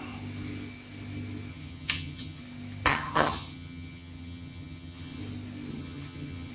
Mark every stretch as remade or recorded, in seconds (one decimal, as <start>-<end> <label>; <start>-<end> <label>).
0.0-1.5 recorded; 1.5-2.4 remade; 2.4-2.9 recorded; 2.9-5.2 remade; 5.2-5.7 recorded; 5.7-6.5 remade